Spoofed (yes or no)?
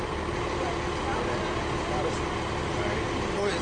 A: no